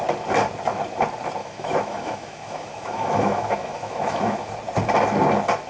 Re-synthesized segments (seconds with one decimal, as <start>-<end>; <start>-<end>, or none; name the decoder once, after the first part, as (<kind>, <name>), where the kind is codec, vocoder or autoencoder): 1.4-4.5 (autoencoder, DAC-VAE)

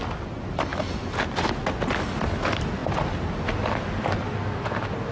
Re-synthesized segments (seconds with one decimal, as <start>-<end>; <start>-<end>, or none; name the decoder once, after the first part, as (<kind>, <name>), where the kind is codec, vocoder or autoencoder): none

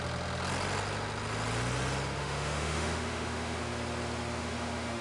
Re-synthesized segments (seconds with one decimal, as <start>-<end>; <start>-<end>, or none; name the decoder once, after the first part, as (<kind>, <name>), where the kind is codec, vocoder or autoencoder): 2.2-3.6 (autoencoder, DAC-VAE); 4.4-5.0

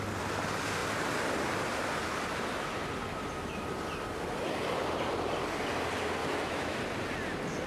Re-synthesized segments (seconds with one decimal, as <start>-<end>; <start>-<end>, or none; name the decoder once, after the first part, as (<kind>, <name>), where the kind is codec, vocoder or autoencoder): 6.2-6.8 (autoencoder, DAC-VAE)

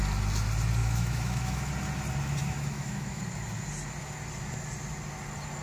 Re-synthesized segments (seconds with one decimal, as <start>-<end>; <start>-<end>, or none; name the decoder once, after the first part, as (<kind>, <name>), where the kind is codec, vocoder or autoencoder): 0.8-1.7 (autoencoder, DAC-VAE); 2.4-3.2